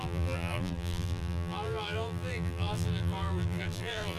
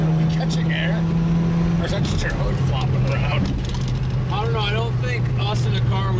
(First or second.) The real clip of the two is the second